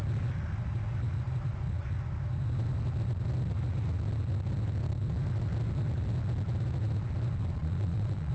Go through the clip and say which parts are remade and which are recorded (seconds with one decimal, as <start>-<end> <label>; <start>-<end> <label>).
0.0-7.6 recorded; 7.6-8.3 remade